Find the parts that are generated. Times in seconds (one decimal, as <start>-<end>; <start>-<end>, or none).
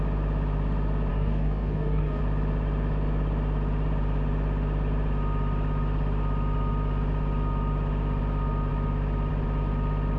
1.1-2.2